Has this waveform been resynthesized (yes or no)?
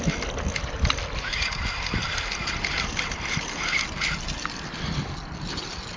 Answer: no